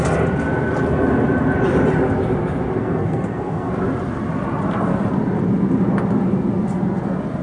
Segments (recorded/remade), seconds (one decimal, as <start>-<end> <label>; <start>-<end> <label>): 0.0-2.8 recorded; 2.8-3.7 remade; 3.7-7.4 recorded